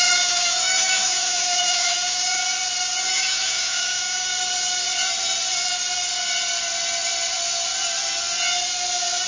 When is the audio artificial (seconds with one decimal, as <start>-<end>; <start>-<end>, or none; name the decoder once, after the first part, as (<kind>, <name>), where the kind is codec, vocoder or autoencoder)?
0.0-2.4 (autoencoder, DAC-VAE); 3.1-4.3